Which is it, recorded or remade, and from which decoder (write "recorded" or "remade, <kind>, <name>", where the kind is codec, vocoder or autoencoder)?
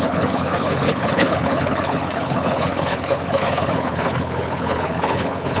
remade, codec, HILCodec